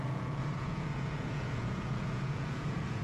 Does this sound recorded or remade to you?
remade